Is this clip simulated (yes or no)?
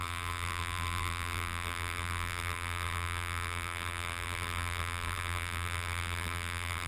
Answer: yes